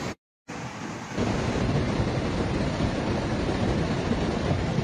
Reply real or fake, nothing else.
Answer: real